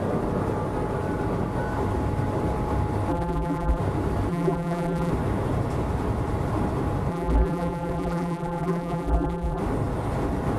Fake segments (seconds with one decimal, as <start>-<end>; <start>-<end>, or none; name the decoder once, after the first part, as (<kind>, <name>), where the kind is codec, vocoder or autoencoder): 3.1-3.8 (vocoder, BigVGAN v2); 4.3-5.1; 7.1-9.6